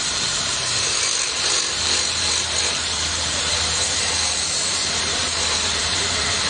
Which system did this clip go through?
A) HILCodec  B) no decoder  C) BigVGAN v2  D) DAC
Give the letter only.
C